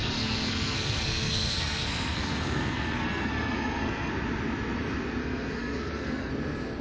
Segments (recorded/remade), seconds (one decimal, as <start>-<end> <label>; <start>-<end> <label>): 0.0-4.1 remade; 4.1-5.2 recorded; 5.2-6.3 remade; 6.3-6.8 recorded